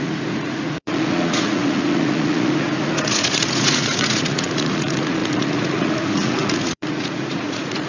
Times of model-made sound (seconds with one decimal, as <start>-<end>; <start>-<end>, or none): 0.0-7.9